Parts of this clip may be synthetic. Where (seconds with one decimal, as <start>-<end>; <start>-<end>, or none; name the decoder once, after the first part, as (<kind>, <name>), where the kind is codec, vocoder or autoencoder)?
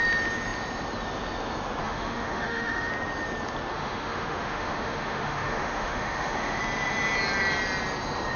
1.8-2.9 (autoencoder, DAC-VAE); 3.7-6.6